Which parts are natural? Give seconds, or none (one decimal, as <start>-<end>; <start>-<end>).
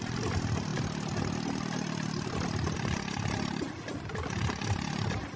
0.0-5.4